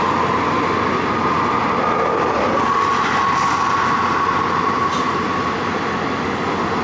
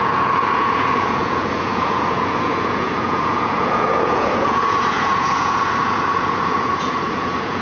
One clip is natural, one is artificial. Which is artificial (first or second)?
second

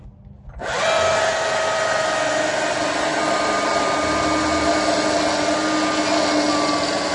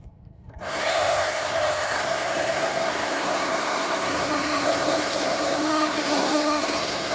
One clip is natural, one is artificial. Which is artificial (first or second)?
second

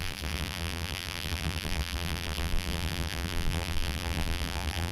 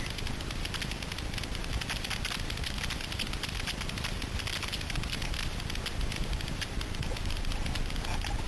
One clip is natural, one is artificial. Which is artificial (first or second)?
first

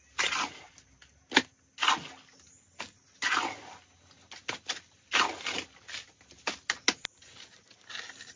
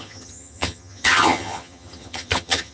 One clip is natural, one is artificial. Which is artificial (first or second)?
second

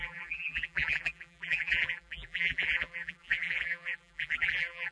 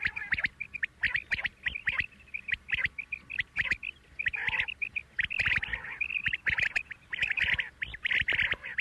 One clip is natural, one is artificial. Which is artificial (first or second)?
first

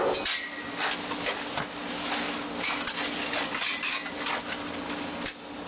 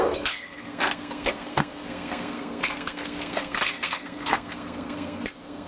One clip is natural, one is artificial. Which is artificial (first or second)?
second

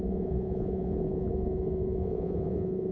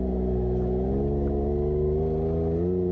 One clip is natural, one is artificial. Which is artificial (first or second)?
first